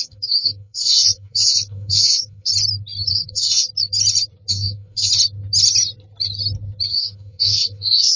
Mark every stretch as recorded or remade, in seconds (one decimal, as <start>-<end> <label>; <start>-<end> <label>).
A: 0.0-2.5 remade; 2.5-3.1 recorded; 3.1-3.7 remade; 3.7-4.5 recorded; 4.5-5.1 remade; 5.1-6.9 recorded; 6.9-8.2 remade